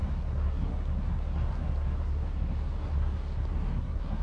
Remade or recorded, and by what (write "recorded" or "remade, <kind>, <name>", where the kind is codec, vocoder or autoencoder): remade, codec, SNAC